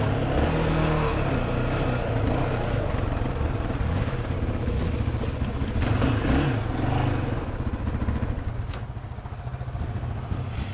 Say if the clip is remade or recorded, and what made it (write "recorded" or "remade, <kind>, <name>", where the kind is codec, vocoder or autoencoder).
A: recorded